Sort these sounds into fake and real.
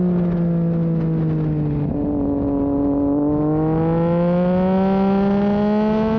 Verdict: real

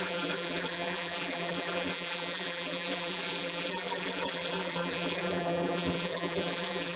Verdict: fake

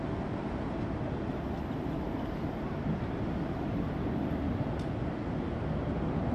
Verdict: real